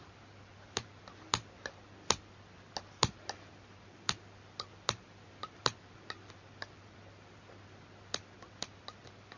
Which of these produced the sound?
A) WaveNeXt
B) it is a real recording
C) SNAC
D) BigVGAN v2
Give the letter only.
D